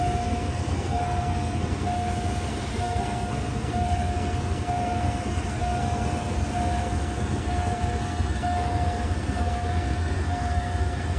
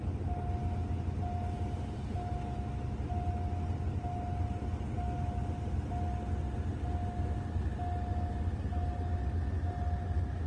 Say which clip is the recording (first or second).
second